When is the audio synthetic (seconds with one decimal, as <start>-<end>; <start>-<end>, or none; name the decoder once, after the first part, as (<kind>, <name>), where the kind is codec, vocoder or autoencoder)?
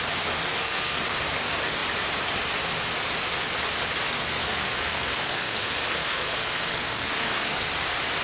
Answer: 0.4-1.0 (codec, SNAC); 4.2-7.6